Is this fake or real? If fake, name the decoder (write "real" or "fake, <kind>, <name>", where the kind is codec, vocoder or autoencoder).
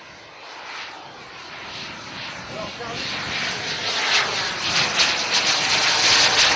real